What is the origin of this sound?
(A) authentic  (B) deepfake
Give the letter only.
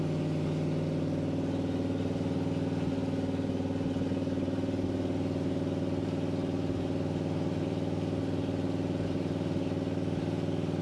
A